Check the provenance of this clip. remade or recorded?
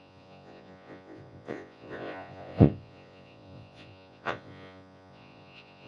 remade